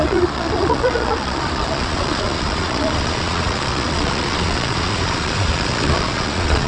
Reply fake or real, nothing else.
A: fake